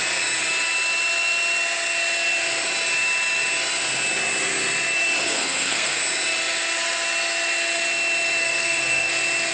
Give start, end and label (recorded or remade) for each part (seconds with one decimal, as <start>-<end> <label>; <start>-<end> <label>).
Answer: 0.0-5.2 recorded; 5.2-6.0 remade; 6.0-8.4 recorded; 8.4-9.1 remade; 9.1-9.5 recorded